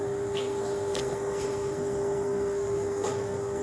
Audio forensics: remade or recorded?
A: remade